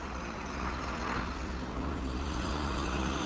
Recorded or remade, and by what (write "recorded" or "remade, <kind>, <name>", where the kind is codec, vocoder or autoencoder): remade, vocoder, Vocos